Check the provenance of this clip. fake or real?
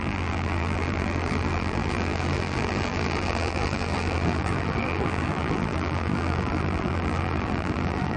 fake